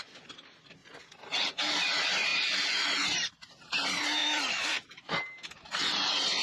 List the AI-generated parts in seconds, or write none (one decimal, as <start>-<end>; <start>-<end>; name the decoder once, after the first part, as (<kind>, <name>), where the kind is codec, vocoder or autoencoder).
4.2-5.0 (vocoder, BigVGAN v2)